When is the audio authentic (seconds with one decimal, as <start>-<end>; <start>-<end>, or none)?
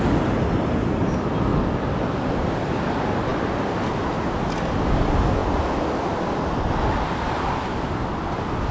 0.0-8.7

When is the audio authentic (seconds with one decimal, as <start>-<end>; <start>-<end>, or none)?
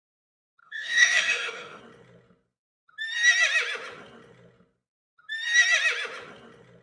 0.0-0.6; 1.8-6.8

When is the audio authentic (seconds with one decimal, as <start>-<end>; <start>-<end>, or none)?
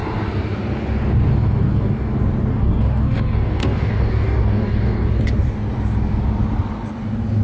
0.0-1.3; 2.1-2.5; 5.1-7.4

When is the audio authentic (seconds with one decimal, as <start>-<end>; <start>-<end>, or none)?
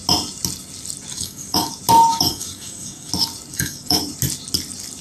0.0-1.1; 1.7-2.1; 3.1-3.5; 4.0-5.0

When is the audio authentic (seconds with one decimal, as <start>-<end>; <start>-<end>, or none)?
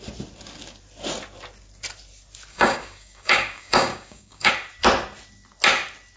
0.0-2.5; 4.5-6.2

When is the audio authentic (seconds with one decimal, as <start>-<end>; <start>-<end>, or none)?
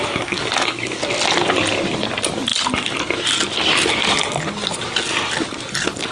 1.0-6.1